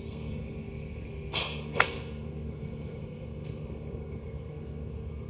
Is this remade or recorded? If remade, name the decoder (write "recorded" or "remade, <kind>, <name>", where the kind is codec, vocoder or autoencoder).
remade, codec, SNAC